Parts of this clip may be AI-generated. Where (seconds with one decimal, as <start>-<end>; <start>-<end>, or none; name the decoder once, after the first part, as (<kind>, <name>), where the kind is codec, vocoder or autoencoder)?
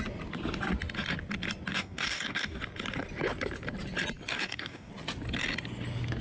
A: 1.7-2.6 (codec, DAC); 4.3-4.9